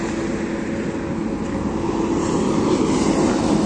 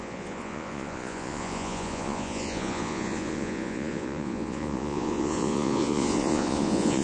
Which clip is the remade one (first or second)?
second